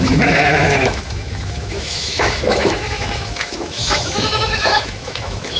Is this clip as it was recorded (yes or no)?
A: no